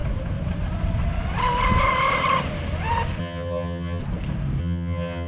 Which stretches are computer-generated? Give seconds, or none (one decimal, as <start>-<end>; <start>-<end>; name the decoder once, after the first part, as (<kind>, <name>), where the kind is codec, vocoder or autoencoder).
3.2-4.0 (vocoder, HiFi-GAN); 4.6-5.3